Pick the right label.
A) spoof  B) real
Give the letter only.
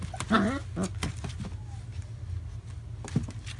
B